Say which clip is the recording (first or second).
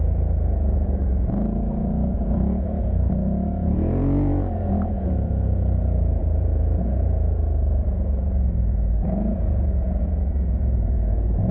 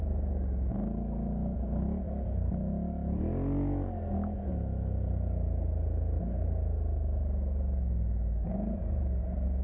second